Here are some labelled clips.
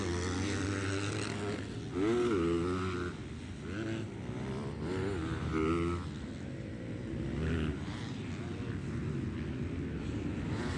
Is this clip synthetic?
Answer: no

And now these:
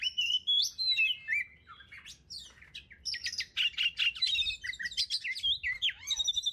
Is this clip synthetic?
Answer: no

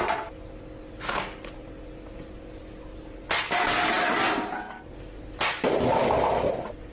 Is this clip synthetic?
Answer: no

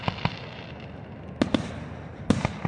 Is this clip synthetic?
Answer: no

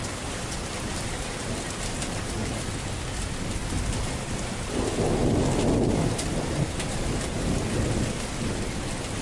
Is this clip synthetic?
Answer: no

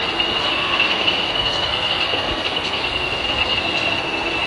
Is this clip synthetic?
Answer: yes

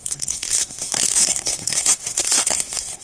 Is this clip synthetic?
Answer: yes